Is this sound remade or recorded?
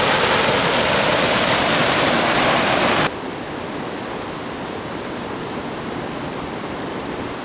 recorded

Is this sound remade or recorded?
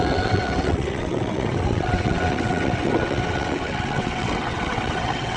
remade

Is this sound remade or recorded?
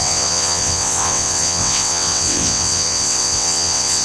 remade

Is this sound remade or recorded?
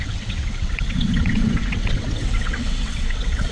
remade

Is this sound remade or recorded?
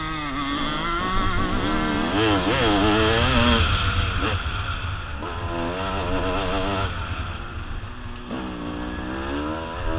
recorded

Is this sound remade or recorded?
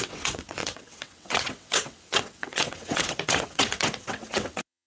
remade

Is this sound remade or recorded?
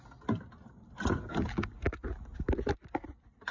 recorded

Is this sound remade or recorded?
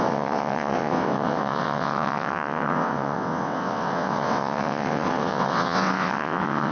remade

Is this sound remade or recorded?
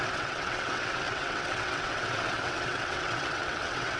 remade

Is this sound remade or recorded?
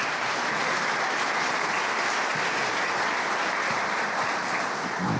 recorded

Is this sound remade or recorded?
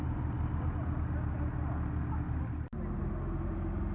recorded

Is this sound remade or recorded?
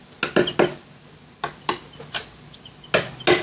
recorded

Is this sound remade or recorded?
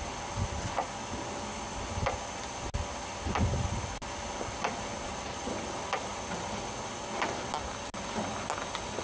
recorded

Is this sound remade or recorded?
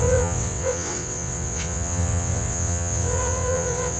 remade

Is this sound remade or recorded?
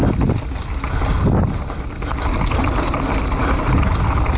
recorded